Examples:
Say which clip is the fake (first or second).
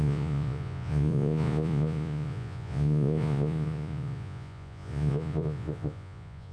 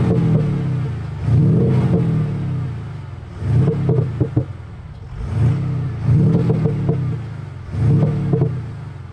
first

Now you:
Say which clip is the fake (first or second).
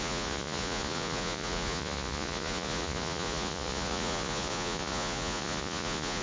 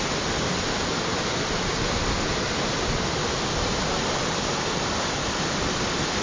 first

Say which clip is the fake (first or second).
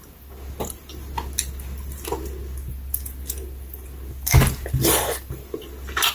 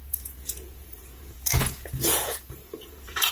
second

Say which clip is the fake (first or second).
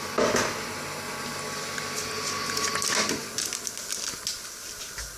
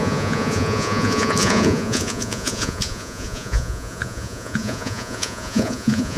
second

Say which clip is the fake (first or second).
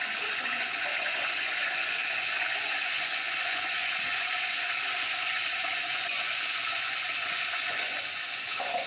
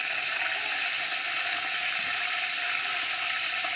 first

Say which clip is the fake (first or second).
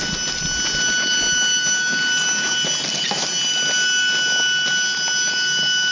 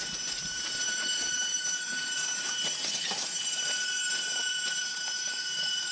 second